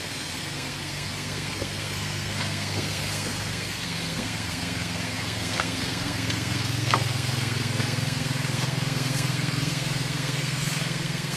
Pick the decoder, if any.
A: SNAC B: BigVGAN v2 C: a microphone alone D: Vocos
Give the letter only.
A